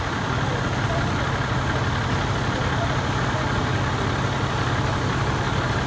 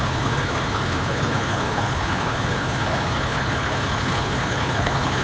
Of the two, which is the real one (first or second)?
first